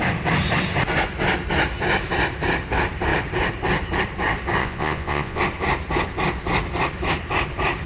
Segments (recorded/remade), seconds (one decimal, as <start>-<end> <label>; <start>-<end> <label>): 0.0-4.6 recorded; 4.6-5.4 remade; 5.4-7.9 recorded